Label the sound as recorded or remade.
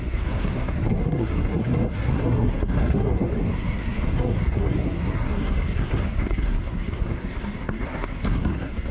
remade